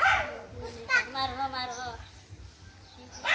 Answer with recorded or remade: recorded